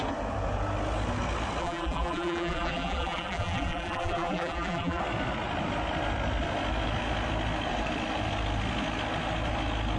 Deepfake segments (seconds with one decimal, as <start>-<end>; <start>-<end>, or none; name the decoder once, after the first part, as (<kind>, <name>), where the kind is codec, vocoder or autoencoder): 1.6-5.0 (vocoder, BigVGAN v2)

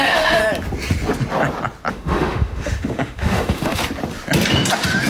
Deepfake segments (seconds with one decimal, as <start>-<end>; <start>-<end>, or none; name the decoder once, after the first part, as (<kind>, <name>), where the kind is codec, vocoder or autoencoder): 0.0-0.4 (autoencoder, DAC-VAE); 1.9-3.8

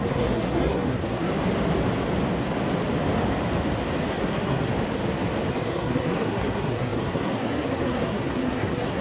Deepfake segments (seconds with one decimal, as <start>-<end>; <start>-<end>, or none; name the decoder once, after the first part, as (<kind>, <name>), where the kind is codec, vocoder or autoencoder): 0.0-1.3 (codec, SNAC); 4.1-4.7; 5.5-9.0

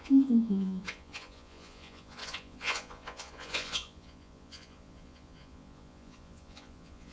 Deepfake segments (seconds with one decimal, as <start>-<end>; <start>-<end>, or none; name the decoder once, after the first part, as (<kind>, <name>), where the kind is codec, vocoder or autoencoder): 0.0-7.1 (vocoder, Vocos)

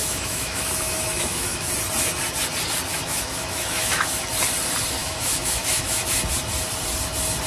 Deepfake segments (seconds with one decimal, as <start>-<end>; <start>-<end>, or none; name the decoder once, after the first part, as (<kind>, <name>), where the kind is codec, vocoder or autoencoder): 0.0-1.7 (autoencoder, DAC-VAE); 2.9-4.2; 5.0-6.2

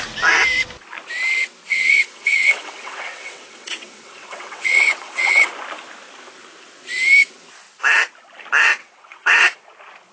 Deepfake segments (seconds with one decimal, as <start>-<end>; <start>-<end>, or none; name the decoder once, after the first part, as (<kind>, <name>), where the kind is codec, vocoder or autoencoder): 1.7-5.5 (vocoder, WaveNeXt); 8.8-9.6

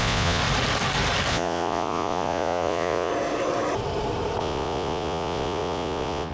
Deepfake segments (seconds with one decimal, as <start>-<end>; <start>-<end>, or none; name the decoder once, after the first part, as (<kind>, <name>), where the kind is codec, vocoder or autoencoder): 0.0-0.4 (vocoder, Vocos); 1.3-3.1; 4.4-6.3

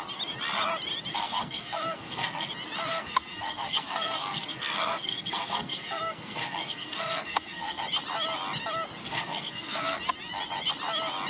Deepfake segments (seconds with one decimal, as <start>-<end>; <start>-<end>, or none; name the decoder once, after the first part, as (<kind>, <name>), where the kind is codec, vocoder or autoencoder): 1.1-2.5 (codec, SNAC); 2.9-7.8; 9.0-10.0